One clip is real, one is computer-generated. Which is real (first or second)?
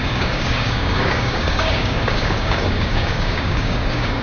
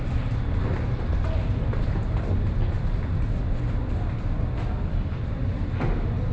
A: second